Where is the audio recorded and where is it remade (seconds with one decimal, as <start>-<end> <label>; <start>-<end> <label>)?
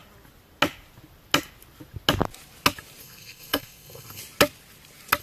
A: 0.0-3.0 recorded; 3.0-4.2 remade; 4.2-5.2 recorded